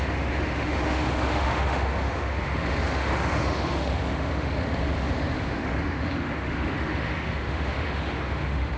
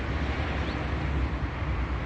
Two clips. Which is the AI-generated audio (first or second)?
first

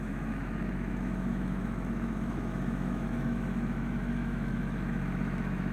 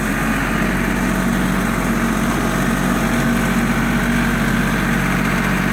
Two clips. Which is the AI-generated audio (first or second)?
first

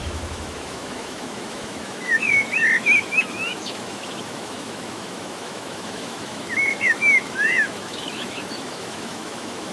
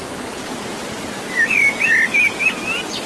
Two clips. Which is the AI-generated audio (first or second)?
first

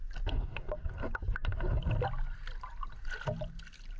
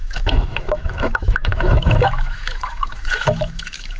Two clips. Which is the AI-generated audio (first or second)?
second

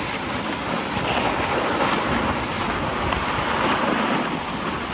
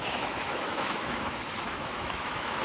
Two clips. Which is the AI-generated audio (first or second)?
second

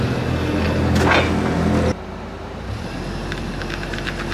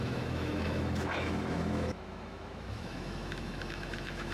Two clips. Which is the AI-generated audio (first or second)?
second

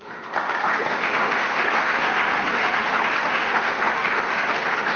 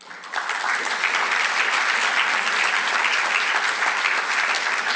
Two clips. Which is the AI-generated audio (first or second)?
first